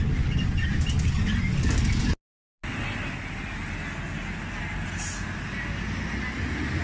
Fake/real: real